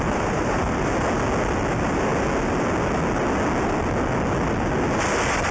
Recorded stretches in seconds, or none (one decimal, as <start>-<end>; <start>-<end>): 0.9-1.7; 2.1-5.5